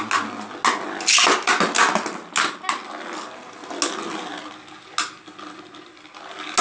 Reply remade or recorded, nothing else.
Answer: recorded